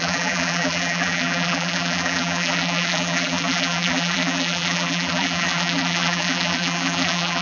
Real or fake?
fake